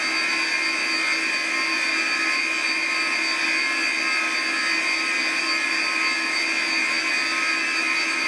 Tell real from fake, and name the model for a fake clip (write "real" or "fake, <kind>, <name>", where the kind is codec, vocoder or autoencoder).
real